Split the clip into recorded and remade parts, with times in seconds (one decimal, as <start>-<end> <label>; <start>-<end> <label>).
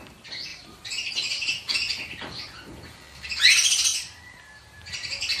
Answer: 0.0-0.5 recorded; 0.5-1.1 remade; 1.1-3.9 recorded; 3.9-4.9 remade; 4.9-5.4 recorded